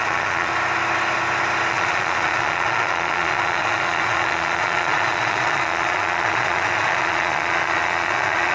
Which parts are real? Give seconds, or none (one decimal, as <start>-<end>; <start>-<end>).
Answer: 0.5-1.7